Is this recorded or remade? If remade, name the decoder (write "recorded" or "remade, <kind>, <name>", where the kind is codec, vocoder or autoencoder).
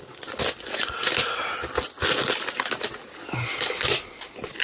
recorded